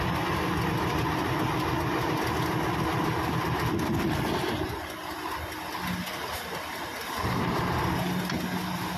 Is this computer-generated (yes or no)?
no